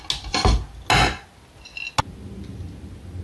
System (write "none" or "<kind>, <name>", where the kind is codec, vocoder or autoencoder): none